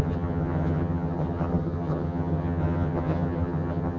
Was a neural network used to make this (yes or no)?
yes